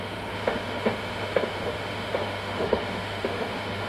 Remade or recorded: remade